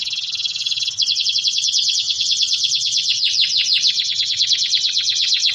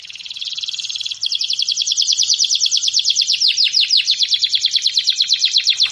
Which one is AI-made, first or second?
first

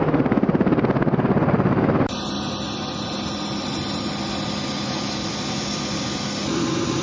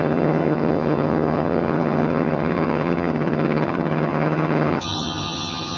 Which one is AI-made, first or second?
second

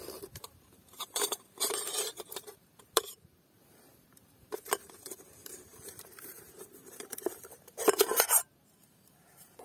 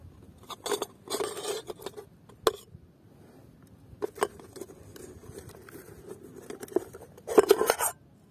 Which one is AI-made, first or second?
first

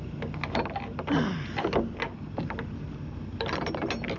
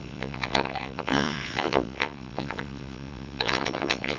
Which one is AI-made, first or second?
second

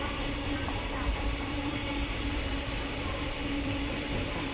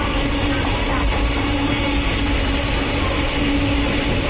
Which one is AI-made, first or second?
first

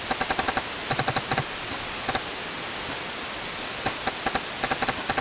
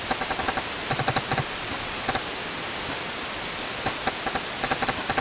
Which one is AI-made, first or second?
second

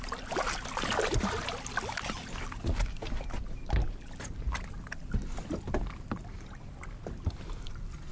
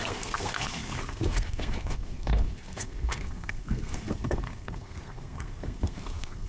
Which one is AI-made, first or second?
second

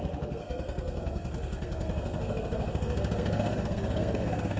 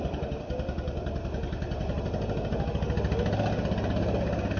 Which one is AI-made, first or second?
first